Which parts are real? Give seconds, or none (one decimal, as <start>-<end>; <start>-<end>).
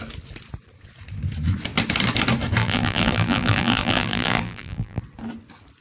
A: 0.0-2.6; 5.0-5.8